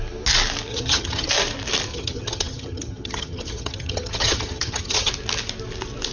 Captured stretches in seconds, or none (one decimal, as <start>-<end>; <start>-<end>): 0.0-0.7; 1.3-1.9; 5.1-6.1

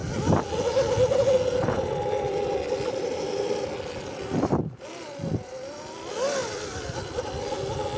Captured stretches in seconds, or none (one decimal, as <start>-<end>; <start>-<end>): 0.0-6.4; 7.4-8.0

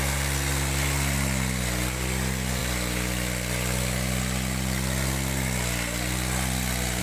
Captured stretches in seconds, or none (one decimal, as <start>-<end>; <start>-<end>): 0.0-7.0

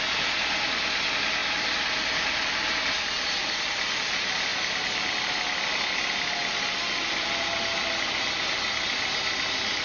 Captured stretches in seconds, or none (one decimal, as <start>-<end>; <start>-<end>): 0.0-9.8

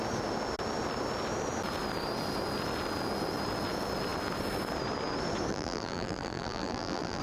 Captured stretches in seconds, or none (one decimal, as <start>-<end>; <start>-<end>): 0.0-5.5

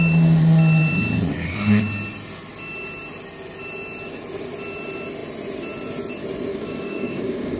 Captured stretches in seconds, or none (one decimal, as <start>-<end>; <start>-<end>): 0.0-6.5

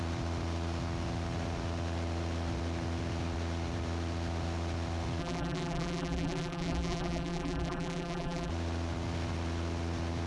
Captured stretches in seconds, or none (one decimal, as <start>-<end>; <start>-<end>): 0.0-5.2; 8.5-10.3

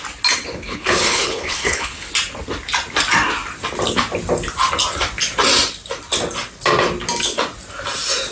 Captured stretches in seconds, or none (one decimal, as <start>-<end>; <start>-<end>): 0.0-0.5; 2.1-8.3